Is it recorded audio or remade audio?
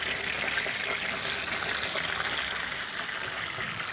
recorded